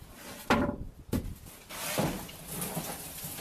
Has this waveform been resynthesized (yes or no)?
no